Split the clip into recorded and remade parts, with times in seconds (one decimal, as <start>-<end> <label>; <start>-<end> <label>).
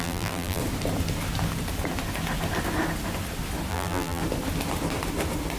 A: 0.0-0.6 remade; 0.6-3.7 recorded; 3.7-4.2 remade; 4.2-5.6 recorded